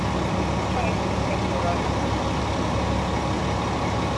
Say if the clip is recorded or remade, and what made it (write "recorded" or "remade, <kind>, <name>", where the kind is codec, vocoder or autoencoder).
recorded